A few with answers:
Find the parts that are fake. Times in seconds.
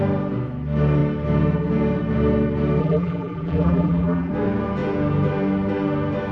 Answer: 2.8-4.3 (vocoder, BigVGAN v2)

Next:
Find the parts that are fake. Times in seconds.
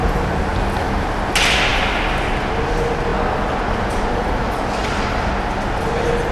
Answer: none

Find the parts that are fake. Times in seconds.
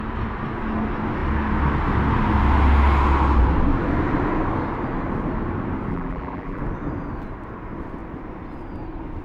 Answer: 5.9-6.6 (vocoder, BigVGAN v2)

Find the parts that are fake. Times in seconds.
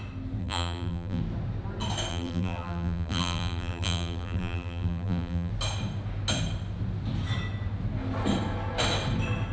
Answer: 0.4-1.2 (vocoder, BigVGAN v2); 2.1-5.5